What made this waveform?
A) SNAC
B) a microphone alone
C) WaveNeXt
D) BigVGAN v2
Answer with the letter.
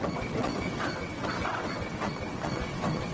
C